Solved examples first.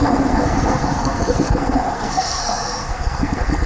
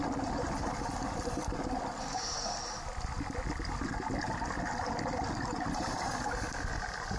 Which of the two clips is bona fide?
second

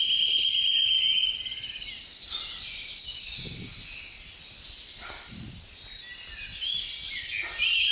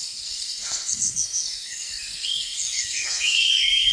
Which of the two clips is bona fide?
first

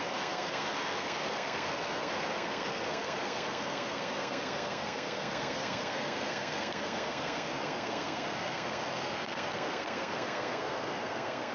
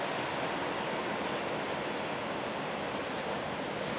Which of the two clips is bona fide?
second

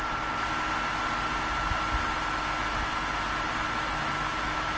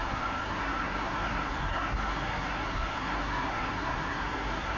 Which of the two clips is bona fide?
first